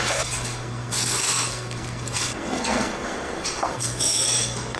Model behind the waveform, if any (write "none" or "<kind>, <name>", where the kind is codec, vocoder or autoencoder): codec, SNAC